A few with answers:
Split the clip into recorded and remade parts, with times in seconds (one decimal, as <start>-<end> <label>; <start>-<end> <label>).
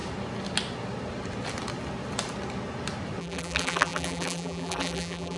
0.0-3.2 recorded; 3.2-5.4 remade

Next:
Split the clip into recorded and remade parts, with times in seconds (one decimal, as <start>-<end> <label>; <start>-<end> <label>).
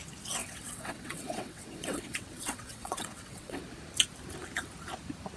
0.0-0.4 recorded; 0.4-3.6 remade; 3.6-5.4 recorded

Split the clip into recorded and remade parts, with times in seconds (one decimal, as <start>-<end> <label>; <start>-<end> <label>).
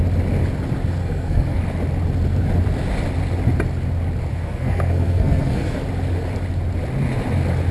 0.0-1.0 recorded; 1.0-1.6 remade; 1.6-4.3 recorded; 4.3-5.8 remade; 5.8-7.7 recorded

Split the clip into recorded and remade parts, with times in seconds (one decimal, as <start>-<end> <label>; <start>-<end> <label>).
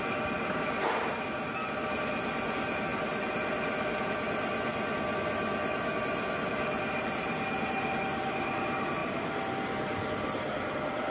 0.0-11.1 recorded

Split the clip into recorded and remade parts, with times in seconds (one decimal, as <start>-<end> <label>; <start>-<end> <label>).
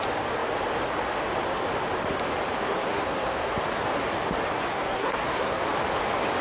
0.0-2.7 recorded; 2.7-3.5 remade; 3.5-4.7 recorded; 4.7-5.6 remade; 5.6-6.4 recorded